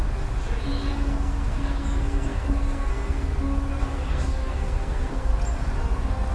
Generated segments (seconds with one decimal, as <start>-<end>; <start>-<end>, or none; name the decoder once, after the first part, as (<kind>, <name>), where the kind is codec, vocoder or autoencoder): 0.9-3.3 (codec, SNAC); 3.8-5.3